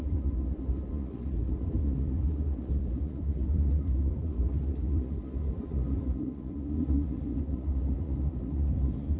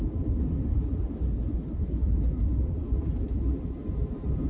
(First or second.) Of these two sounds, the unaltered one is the second